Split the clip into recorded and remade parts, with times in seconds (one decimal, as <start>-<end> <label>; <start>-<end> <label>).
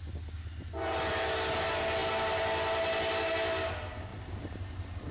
0.0-4.1 recorded; 4.1-5.1 remade